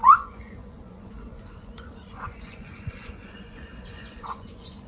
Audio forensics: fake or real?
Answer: fake